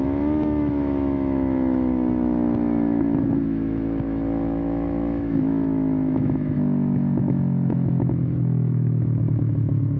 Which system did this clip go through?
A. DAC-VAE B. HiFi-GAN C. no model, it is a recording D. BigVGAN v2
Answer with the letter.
A